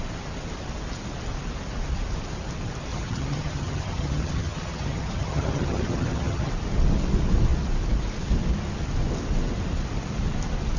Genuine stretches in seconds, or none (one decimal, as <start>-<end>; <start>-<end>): 0.0-2.9; 6.5-10.8